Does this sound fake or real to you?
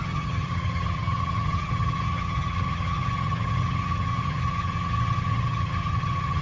fake